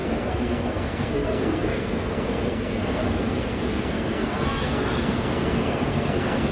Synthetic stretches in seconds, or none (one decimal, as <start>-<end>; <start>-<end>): 0.0-6.5